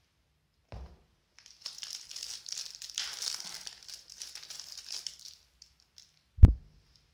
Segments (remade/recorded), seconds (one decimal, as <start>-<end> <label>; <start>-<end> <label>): 0.0-6.0 recorded; 6.0-6.6 remade; 6.6-7.1 recorded